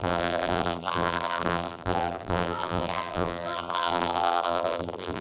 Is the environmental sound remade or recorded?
remade